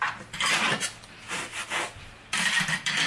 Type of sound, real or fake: real